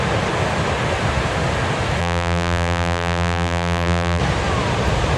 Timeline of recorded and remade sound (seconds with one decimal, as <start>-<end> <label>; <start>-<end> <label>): 0.0-2.0 recorded; 2.0-4.2 remade; 4.2-5.2 recorded